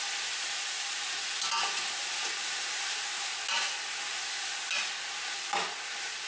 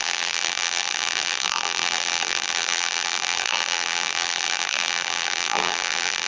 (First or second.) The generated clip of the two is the second